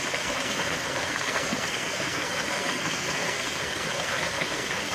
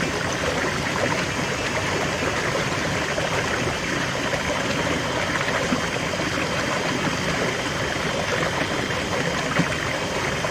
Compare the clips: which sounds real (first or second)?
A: second